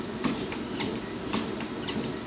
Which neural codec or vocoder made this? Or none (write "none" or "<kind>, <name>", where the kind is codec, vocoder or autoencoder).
vocoder, BigVGAN v2